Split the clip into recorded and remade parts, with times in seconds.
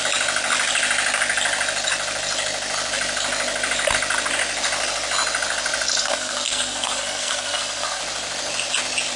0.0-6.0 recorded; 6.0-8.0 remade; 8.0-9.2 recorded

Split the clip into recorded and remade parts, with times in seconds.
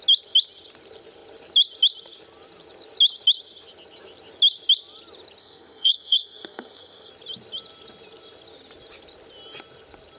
0.0-5.4 recorded; 5.4-7.1 remade; 7.1-10.2 recorded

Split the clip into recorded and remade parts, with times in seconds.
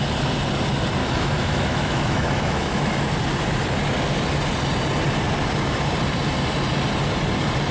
0.0-1.0 recorded; 1.0-2.8 remade; 2.8-7.7 recorded